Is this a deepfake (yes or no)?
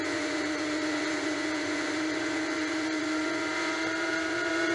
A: yes